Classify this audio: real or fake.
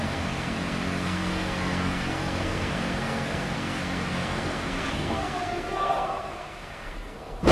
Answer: fake